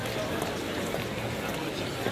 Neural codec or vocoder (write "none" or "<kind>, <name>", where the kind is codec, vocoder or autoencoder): none